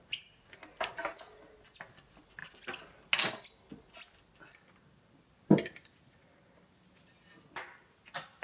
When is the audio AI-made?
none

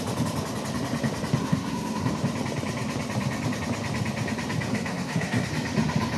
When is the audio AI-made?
1.4-2.1 (codec, SNAC); 4.7-5.5

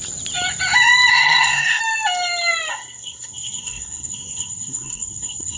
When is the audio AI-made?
1.1-1.8 (codec, SNAC); 2.7-5.6

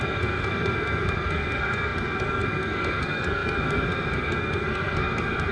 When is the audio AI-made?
0.0-5.5 (codec, SNAC)

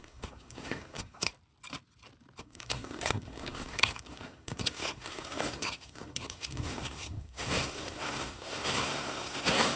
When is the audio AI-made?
0.0-1.3 (codec, SNAC); 2.4-9.8

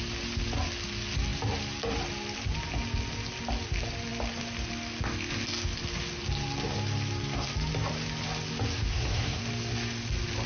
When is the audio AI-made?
8.9-9.4 (codec, SNAC)